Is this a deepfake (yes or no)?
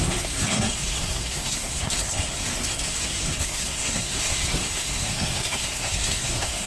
yes